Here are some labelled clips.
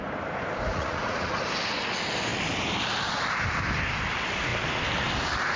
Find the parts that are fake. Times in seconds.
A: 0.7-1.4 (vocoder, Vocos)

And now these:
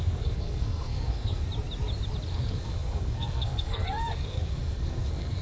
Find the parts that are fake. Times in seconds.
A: 0.0-1.4 (codec, SNAC); 2.3-5.4

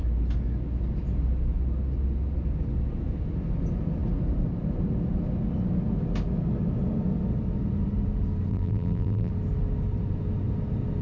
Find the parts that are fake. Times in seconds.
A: 8.5-9.3 (vocoder, BigVGAN v2)

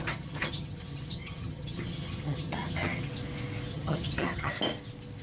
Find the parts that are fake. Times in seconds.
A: 0.0-3.1 (vocoder, HiFi-GAN); 3.7-4.5

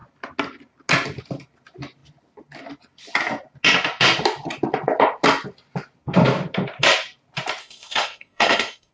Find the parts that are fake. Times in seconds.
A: 7.6-8.9 (codec, SNAC)